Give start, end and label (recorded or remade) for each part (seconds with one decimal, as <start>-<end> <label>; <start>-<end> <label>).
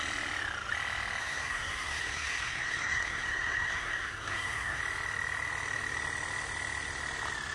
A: 0.0-1.2 recorded; 1.2-4.8 remade; 4.8-7.5 recorded